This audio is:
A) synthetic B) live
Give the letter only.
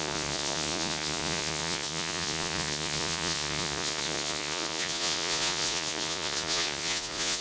A